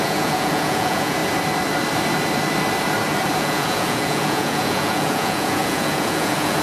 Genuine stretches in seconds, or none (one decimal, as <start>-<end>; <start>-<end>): 1.2-3.4